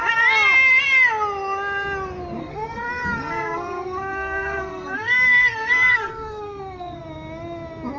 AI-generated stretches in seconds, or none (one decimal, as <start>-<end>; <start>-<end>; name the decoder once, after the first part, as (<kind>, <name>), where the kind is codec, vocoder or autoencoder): 2.4-7.0 (codec, SNAC)

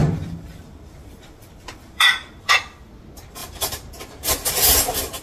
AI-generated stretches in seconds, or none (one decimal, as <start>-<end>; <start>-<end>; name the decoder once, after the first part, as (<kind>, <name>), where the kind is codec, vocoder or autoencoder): 0.0-2.6 (vocoder, BigVGAN v2); 3.4-4.3

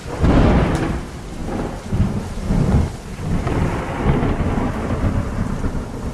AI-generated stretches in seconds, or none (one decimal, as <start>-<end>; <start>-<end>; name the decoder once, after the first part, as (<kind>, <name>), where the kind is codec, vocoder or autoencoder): none

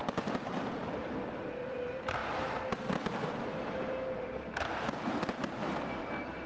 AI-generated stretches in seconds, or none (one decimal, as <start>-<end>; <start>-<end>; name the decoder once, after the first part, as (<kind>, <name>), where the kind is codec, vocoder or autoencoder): none

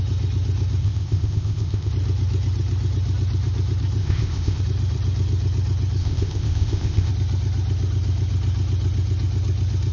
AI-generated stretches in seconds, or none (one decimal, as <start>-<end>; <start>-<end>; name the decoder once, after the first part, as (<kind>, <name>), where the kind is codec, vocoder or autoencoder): 0.8-1.9 (codec, ZipCodec); 4.0-4.6; 6.0-7.1

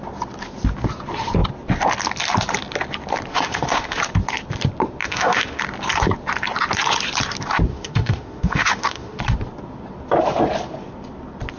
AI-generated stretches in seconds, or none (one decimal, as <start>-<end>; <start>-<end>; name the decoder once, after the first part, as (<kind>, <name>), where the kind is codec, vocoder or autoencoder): 3.3-4.0 (autoencoder, DAC-VAE); 5.0-5.6; 7.7-9.2